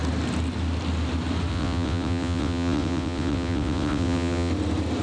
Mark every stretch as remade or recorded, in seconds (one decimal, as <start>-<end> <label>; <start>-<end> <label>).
0.0-1.5 recorded; 1.5-4.5 remade; 4.5-5.0 recorded